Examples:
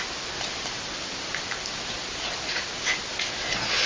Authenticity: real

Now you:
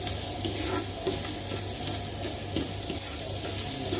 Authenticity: real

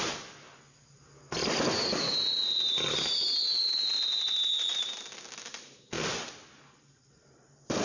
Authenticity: real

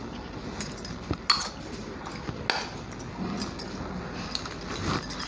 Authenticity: real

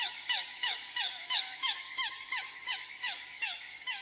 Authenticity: fake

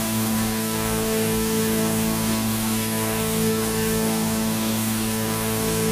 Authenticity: fake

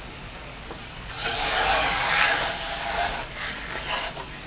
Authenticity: fake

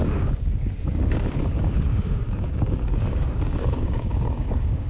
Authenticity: fake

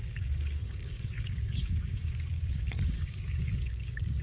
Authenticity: fake